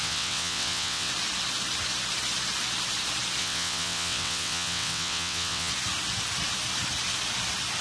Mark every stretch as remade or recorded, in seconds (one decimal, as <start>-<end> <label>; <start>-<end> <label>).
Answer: 0.0-1.1 remade; 1.1-3.4 recorded; 3.4-5.7 remade; 5.7-7.8 recorded